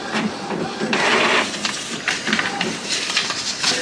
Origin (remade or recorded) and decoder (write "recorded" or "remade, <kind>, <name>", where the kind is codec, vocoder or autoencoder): remade, vocoder, BigVGAN v2